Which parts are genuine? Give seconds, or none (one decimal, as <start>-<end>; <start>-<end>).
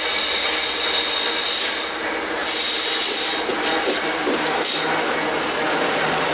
0.0-6.3